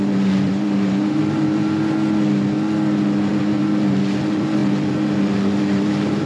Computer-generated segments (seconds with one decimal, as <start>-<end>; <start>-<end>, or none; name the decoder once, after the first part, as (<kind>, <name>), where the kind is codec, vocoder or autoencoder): 0.0-1.6 (vocoder, BigVGAN v2); 3.3-6.3